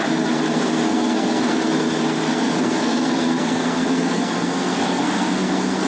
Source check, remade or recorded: remade